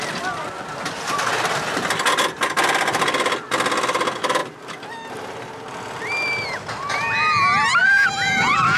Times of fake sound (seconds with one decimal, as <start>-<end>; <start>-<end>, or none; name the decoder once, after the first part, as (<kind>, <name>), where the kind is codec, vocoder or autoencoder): 7.8-8.8 (vocoder, Vocos)